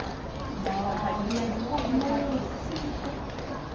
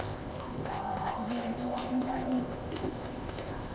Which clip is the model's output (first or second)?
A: second